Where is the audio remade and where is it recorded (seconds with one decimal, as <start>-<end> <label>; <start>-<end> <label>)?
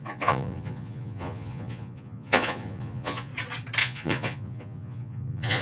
0.0-3.3 remade; 3.3-3.8 recorded; 3.8-5.6 remade